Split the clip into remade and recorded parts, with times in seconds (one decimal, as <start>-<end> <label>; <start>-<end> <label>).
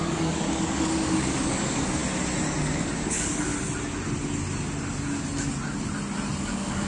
0.0-2.0 remade; 2.0-2.6 recorded; 2.6-3.5 remade; 3.5-6.4 recorded; 6.4-6.9 remade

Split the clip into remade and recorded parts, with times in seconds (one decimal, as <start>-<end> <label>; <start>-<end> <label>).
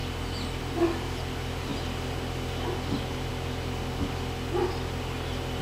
0.0-5.6 recorded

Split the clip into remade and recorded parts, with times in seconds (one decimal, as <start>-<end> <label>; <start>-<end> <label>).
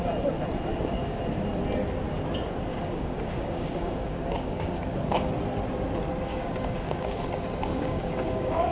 0.0-0.7 recorded; 0.7-1.2 remade; 1.2-2.7 recorded; 2.7-5.3 remade; 5.3-6.3 recorded; 6.3-7.2 remade; 7.2-7.7 recorded; 7.7-8.7 remade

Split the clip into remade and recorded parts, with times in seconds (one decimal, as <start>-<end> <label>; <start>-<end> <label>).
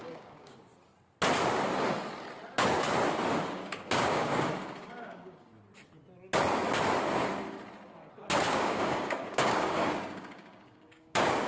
0.0-0.7 remade; 0.7-3.5 recorded; 3.5-5.5 remade; 5.5-8.5 recorded; 8.5-11.5 remade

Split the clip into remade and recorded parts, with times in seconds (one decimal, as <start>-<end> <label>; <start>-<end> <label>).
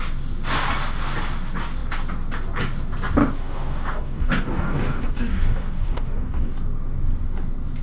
0.0-3.2 recorded; 3.2-6.5 remade; 6.5-7.8 recorded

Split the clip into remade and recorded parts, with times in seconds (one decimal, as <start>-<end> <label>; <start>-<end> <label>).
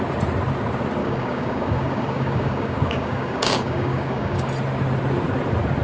0.0-1.0 recorded; 1.0-4.5 remade; 4.5-5.8 recorded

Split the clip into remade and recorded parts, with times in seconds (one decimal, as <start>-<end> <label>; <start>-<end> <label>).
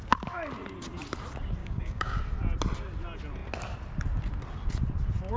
0.0-1.6 recorded; 1.6-2.2 remade; 2.2-5.4 recorded